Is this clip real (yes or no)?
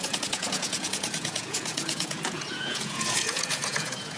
no